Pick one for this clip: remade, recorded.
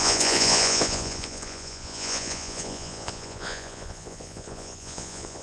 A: remade